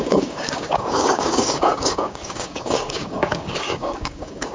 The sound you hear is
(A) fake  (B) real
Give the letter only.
A